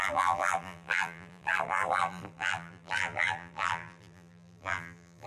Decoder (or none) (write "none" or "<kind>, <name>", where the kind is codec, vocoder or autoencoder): vocoder, BigVGAN v2